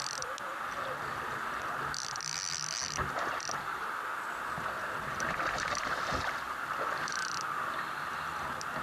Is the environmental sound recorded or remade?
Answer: recorded